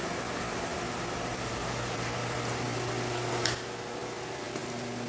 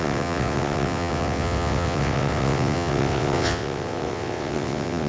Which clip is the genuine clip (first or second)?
first